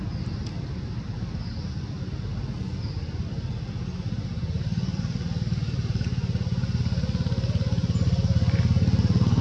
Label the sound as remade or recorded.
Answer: recorded